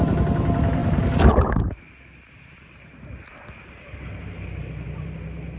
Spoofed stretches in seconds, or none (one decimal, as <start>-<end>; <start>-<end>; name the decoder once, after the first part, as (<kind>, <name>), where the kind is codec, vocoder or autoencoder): none